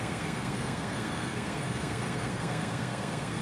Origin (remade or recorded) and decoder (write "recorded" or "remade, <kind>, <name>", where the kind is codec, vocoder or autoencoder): remade, codec, SNAC